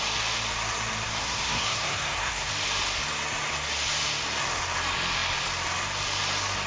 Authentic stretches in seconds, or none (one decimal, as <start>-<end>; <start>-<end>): 0.0-1.2; 2.5-6.7